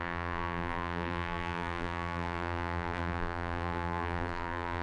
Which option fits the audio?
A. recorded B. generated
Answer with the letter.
B